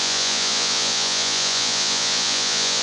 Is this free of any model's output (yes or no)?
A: no